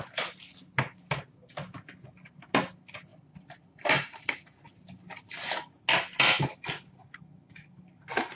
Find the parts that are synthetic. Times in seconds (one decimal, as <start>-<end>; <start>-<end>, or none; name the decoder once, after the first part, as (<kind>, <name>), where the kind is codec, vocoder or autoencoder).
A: 3.1-4.7 (vocoder, BigVGAN v2)

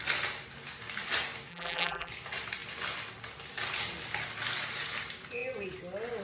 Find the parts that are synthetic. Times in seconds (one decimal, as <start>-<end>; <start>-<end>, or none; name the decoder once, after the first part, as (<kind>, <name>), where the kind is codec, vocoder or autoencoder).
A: 1.5-2.1 (vocoder, BigVGAN v2)

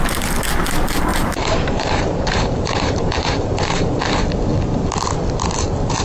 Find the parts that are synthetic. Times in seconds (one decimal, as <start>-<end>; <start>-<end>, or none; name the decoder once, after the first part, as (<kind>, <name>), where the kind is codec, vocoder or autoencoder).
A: 1.1-4.0 (vocoder, BigVGAN v2)

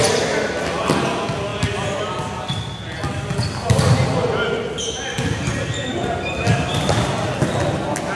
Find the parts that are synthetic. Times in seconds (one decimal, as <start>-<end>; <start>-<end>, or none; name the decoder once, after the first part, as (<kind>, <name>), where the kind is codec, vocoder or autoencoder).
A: none

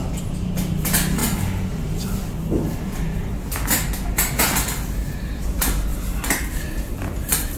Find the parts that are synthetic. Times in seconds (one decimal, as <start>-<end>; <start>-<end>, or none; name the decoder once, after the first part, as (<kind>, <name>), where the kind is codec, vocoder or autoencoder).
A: 5.9-7.0 (vocoder, BigVGAN v2)

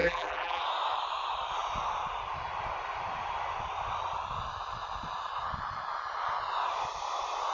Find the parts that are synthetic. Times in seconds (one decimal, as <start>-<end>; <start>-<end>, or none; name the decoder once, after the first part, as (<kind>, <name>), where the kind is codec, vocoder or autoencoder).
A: 0.0-0.6 (vocoder, BigVGAN v2)